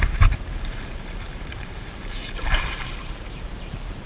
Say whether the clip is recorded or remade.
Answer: remade